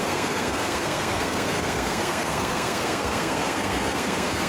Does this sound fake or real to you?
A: fake